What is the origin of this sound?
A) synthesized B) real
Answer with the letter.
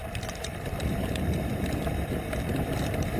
A